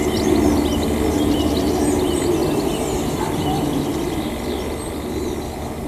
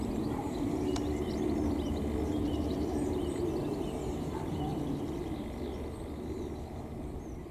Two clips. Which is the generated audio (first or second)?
second